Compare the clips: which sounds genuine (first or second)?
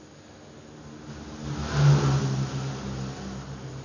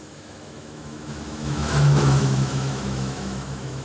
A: first